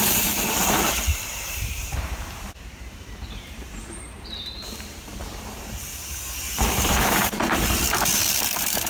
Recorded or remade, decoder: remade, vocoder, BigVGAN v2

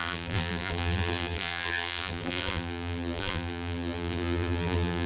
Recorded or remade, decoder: remade, vocoder, BigVGAN v2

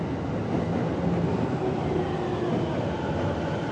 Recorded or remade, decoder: recorded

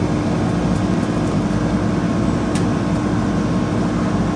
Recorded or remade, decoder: recorded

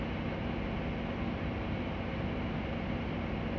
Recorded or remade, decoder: recorded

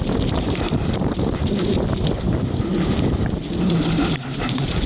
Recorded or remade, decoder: remade, vocoder, BigVGAN v2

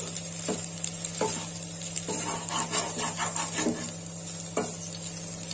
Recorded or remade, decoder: recorded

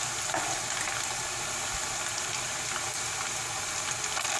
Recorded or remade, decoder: recorded